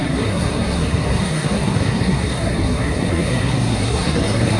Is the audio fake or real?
fake